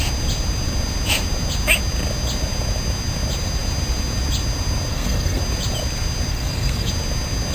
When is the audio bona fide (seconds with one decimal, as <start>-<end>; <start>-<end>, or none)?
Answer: 0.0-4.9; 5.4-6.3; 6.9-7.5